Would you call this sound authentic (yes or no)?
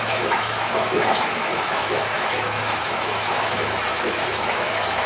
no